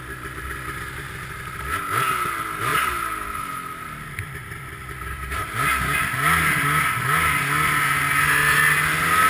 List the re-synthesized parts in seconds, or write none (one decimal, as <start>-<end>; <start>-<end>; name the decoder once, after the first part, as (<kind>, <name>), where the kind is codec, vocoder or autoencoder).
2.7-5.5 (vocoder, BigVGAN v2)